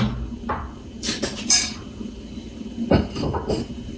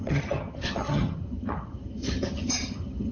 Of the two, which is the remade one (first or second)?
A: second